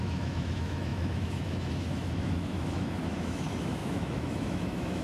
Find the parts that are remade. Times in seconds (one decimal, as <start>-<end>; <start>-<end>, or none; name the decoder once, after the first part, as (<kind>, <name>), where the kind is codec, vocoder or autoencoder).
0.0-5.0 (autoencoder, DAC-VAE)

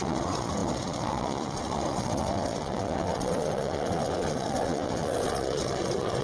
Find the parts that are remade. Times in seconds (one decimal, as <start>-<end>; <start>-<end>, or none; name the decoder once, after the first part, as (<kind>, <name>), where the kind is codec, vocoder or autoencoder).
0.0-6.2 (vocoder, WaveNeXt)